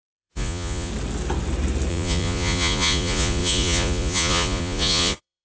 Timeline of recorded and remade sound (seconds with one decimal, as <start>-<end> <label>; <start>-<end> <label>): 0.0-0.9 remade; 0.9-1.9 recorded; 1.9-5.4 remade